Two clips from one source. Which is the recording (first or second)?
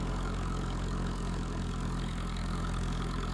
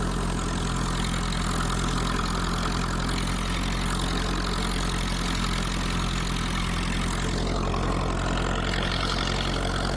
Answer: second